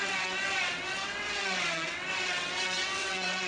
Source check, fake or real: fake